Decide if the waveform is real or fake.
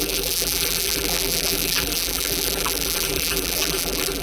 fake